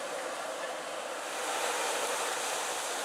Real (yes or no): no